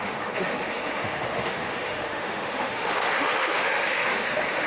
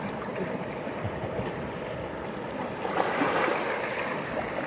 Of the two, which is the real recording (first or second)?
second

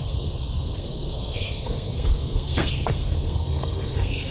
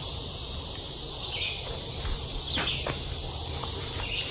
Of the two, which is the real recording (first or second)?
second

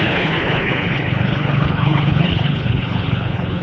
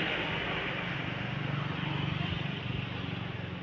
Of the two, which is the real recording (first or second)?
second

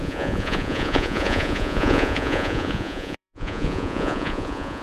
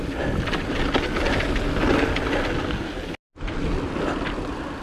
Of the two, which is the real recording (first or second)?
second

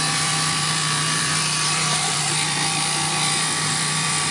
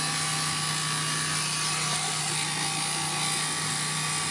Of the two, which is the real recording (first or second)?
second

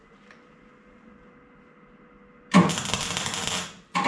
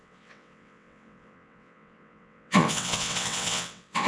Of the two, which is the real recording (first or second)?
first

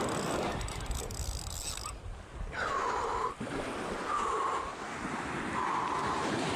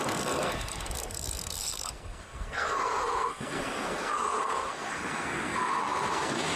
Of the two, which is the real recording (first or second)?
first